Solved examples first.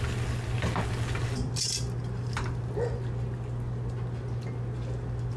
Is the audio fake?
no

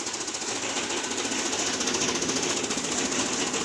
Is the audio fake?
no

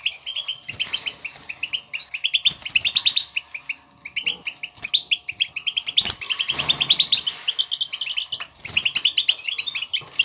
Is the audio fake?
no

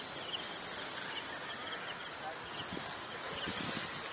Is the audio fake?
no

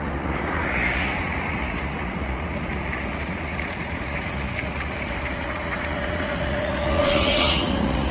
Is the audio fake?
yes